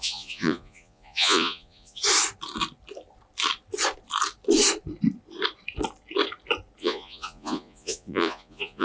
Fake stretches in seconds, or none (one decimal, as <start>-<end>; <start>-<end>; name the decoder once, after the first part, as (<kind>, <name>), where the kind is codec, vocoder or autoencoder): 0.0-2.0 (vocoder, Vocos); 6.8-8.8